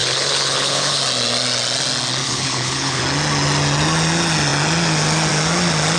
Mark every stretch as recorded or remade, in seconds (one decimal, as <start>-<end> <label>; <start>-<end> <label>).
0.0-1.0 remade; 1.0-2.2 recorded; 2.2-3.0 remade; 3.0-6.0 recorded